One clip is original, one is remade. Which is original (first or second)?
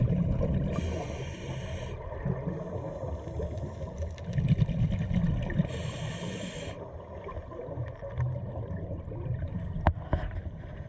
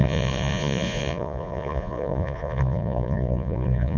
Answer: first